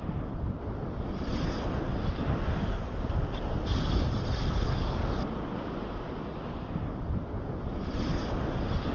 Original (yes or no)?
yes